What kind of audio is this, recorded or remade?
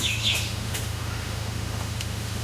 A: remade